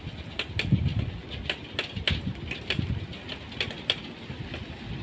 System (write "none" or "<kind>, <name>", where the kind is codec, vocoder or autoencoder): none